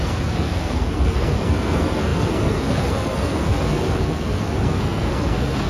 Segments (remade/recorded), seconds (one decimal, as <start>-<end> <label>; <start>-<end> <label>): 0.0-5.7 remade